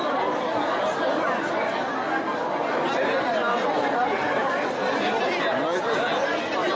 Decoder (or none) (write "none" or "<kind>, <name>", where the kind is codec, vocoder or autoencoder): none